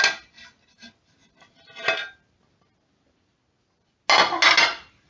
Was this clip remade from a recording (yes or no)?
no